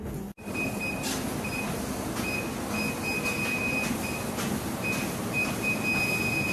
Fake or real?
real